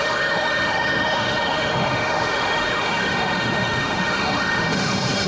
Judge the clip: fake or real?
fake